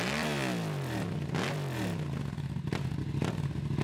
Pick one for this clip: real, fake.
real